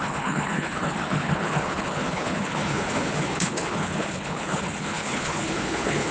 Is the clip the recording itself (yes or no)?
no